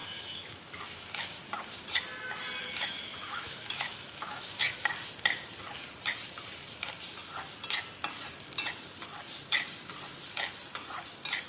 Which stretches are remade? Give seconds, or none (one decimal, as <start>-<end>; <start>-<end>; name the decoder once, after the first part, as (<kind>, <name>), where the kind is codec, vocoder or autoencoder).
0.0-1.4 (autoencoder, DAC-VAE); 2.6-4.6